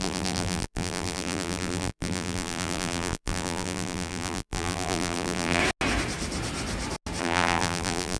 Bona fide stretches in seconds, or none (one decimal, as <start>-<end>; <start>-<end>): 5.6-7.2